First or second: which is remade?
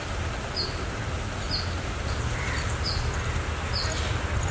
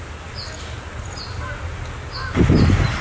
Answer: first